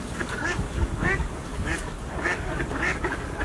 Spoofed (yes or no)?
yes